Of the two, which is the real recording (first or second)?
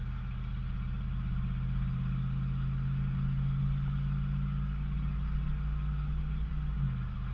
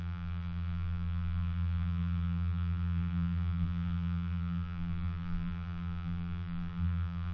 first